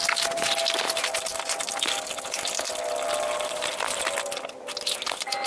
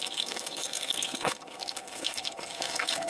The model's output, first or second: second